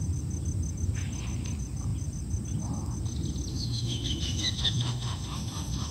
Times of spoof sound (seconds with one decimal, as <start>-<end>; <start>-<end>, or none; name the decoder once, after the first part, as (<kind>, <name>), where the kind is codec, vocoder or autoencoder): 3.5-5.9 (autoencoder, DAC-VAE)